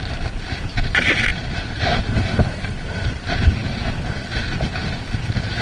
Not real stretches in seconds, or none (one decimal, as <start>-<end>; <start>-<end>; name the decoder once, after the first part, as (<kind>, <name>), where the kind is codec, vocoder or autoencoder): 0.0-5.6 (vocoder, BigVGAN v2)